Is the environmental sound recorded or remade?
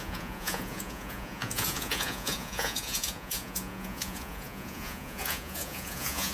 remade